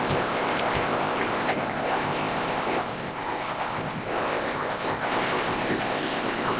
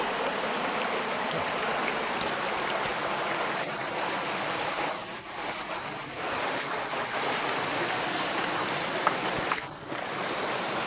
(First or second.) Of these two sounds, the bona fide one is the second